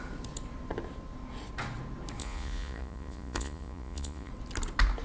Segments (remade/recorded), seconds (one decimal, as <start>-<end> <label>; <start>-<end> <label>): 0.0-2.2 recorded; 2.2-4.3 remade; 4.3-5.0 recorded